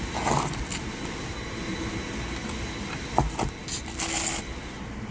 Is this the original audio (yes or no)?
yes